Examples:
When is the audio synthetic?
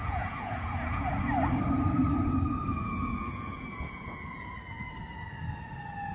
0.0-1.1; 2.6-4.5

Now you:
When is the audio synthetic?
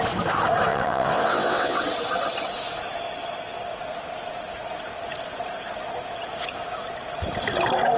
0.7-1.8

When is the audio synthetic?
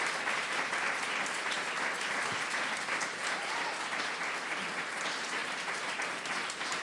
none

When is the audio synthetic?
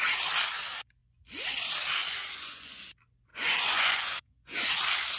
2.0-2.8; 3.3-4.8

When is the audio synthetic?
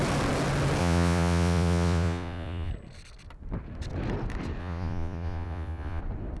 0.8-2.7; 4.6-6.0